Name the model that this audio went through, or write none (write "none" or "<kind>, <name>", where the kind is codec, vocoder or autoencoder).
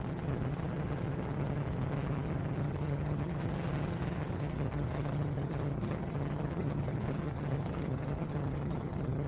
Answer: vocoder, HiFi-GAN